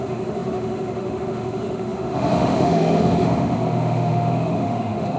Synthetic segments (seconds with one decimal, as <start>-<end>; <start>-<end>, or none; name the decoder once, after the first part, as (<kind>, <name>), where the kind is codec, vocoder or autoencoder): 0.0-5.2 (autoencoder, DAC-VAE)